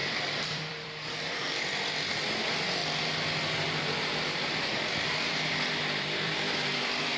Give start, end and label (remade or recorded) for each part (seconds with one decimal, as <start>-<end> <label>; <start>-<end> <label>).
0.0-2.8 remade; 2.8-4.1 recorded; 4.1-7.2 remade

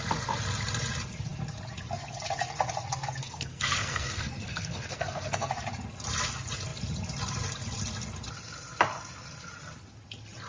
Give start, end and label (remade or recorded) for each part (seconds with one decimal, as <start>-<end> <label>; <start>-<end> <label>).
0.0-3.2 recorded; 3.2-5.5 remade; 5.5-10.5 recorded